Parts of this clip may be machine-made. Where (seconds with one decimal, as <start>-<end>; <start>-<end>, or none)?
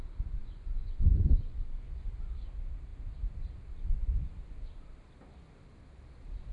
0.4-2.1